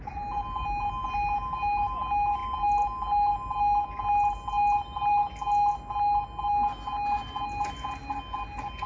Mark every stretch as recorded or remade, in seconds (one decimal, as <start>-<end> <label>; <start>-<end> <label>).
0.0-8.9 recorded